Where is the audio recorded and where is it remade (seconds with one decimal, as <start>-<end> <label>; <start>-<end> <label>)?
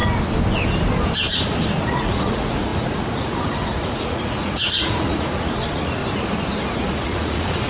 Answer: 0.0-1.8 recorded; 1.8-6.0 remade; 6.0-6.6 recorded; 6.6-7.7 remade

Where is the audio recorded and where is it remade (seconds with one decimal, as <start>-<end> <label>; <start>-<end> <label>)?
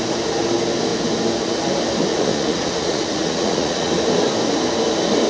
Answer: 0.0-2.1 recorded; 2.1-3.9 remade; 3.9-5.3 recorded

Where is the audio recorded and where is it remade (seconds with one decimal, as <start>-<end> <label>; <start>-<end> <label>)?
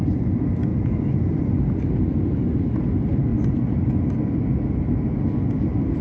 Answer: 0.0-0.7 recorded; 0.7-2.6 remade; 2.6-6.0 recorded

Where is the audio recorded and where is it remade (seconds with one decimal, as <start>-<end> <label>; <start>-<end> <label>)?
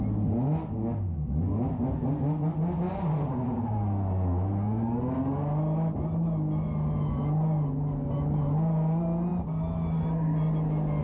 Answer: 0.0-11.0 recorded